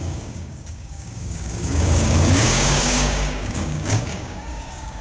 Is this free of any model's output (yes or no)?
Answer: no